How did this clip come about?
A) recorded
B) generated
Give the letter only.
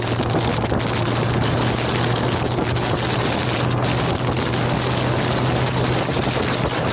A